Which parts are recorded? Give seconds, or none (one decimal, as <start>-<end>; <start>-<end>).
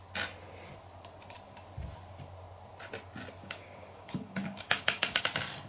0.0-3.4; 5.2-5.7